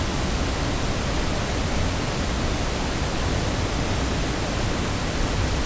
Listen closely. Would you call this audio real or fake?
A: real